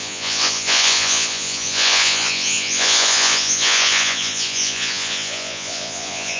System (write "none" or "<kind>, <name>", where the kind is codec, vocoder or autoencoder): vocoder, Vocos